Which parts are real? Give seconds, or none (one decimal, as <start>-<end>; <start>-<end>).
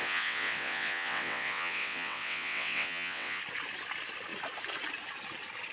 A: 3.4-5.7